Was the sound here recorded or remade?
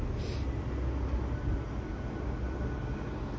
recorded